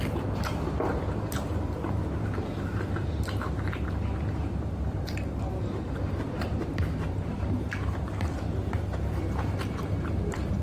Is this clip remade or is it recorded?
remade